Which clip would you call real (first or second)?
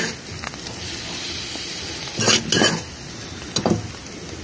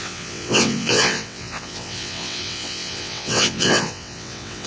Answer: first